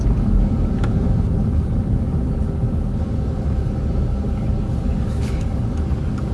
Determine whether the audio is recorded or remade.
remade